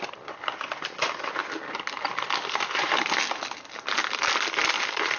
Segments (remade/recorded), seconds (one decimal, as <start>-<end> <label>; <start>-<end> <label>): 0.0-5.2 recorded